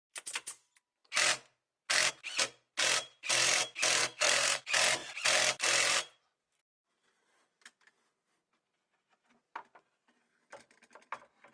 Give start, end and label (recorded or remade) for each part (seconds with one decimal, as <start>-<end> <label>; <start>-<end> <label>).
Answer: 0.0-4.0 recorded; 4.0-4.6 remade; 4.6-11.5 recorded